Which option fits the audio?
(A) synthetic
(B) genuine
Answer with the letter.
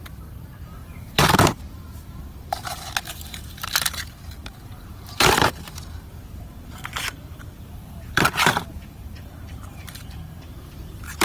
A